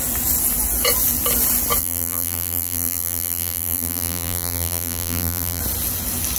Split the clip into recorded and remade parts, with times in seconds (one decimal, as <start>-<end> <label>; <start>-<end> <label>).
0.0-1.8 recorded; 1.8-5.6 remade; 5.6-6.4 recorded